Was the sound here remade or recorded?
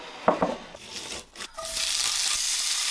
recorded